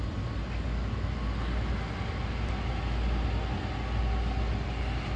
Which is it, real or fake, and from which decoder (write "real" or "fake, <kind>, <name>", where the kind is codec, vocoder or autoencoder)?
real